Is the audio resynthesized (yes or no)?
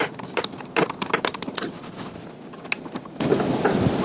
no